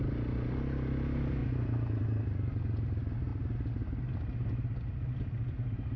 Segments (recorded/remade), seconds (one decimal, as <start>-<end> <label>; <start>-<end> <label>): 0.0-6.0 recorded

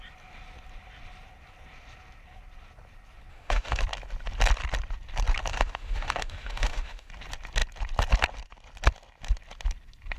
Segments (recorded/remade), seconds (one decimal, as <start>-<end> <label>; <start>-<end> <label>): 0.0-3.3 recorded; 3.3-3.8 remade; 3.8-5.5 recorded; 5.5-7.1 remade; 7.1-10.2 recorded

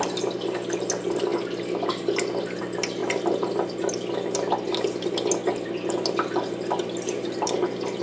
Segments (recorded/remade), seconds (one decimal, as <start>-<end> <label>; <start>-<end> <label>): 0.0-8.0 recorded